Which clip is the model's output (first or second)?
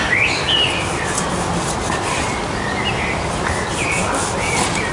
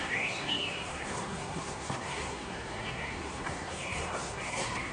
second